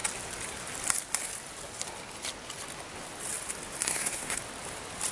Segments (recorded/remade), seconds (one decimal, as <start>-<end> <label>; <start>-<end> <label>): 0.0-3.8 recorded; 3.8-4.4 remade; 4.4-5.1 recorded